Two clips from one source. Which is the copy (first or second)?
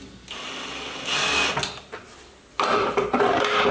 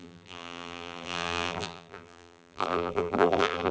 second